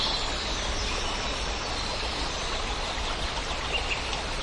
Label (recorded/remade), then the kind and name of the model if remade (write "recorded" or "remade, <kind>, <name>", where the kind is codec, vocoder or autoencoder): recorded